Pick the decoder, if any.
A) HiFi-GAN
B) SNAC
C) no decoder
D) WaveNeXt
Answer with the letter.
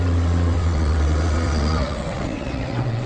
D